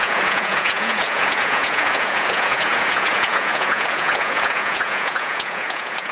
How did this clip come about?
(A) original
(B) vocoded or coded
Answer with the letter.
B